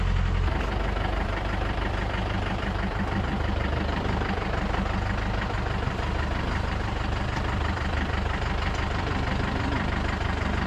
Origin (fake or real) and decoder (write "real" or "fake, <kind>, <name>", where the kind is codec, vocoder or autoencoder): fake, vocoder, BigVGAN v2